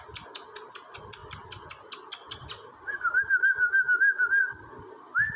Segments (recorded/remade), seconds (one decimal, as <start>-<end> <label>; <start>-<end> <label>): 0.0-5.4 recorded